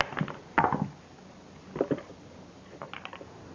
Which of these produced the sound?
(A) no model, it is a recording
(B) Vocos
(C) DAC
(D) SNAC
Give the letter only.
A